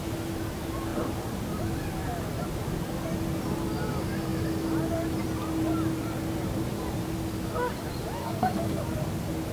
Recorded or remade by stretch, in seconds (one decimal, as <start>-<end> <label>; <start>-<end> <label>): 0.0-8.2 recorded; 8.2-8.8 remade; 8.8-9.5 recorded